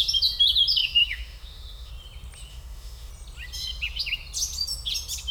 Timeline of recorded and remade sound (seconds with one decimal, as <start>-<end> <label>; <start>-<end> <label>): 0.0-0.8 recorded; 0.8-1.9 remade; 1.9-2.5 recorded; 2.5-3.1 remade; 3.1-5.3 recorded

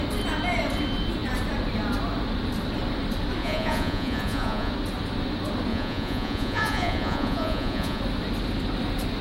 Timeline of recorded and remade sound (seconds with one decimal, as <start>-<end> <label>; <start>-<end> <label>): 0.0-3.4 recorded; 3.4-4.7 remade; 4.7-5.7 recorded; 5.7-8.0 remade; 8.0-9.2 recorded

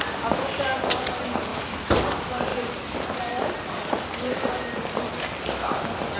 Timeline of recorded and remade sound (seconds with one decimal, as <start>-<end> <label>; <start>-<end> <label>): 0.0-6.2 recorded

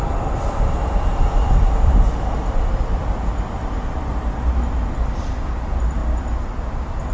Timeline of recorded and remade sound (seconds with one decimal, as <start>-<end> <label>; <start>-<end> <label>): 0.0-7.1 recorded

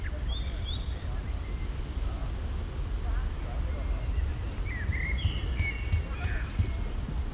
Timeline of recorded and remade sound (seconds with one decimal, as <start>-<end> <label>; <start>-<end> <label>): 0.0-2.2 remade; 2.2-6.2 recorded; 6.2-7.3 remade

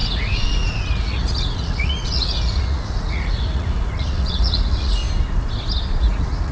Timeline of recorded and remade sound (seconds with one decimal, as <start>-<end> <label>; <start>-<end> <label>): 0.0-5.0 remade; 5.0-6.0 recorded; 6.0-6.5 remade

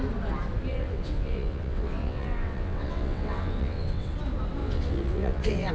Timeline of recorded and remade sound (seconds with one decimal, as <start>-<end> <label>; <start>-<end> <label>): 0.0-0.7 recorded; 0.7-4.1 remade; 4.1-4.6 recorded; 4.6-5.7 remade

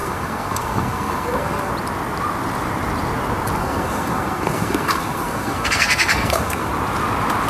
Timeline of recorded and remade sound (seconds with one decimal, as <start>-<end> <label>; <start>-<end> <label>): 0.0-1.7 remade; 1.7-3.6 recorded; 3.6-6.7 remade; 6.7-7.5 recorded